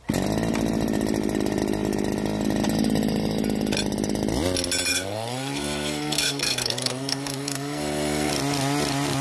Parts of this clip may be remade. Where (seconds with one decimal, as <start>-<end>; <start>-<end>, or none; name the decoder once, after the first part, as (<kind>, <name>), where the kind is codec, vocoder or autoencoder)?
4.9-8.3 (codec, SNAC)